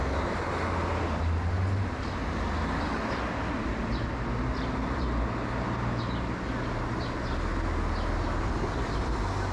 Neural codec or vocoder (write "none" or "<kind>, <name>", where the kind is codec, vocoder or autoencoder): none